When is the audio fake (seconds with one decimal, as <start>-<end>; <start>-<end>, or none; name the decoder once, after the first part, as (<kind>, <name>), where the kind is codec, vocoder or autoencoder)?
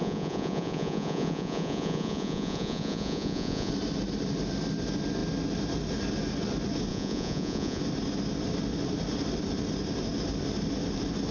0.0-3.7 (vocoder, Vocos); 6.9-7.8